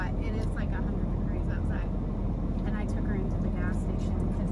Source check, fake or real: real